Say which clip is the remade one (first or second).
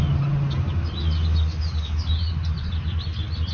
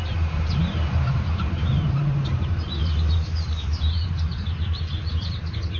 second